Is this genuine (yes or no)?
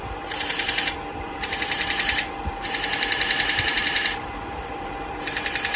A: no